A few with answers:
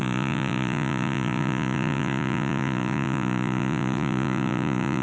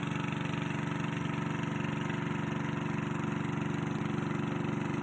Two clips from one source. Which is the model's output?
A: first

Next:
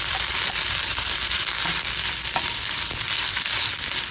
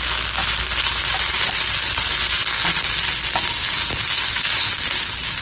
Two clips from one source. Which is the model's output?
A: first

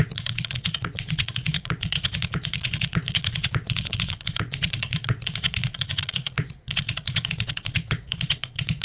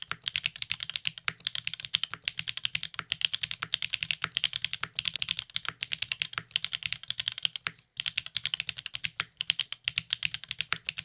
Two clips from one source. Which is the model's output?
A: first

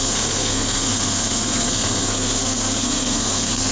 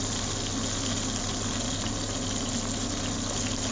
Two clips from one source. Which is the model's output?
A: first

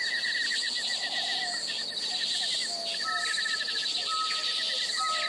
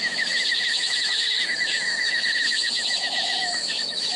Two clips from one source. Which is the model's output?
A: second